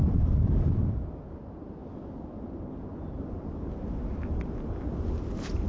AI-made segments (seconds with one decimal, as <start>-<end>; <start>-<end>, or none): none